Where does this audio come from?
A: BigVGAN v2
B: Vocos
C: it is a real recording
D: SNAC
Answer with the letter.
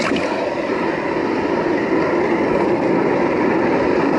C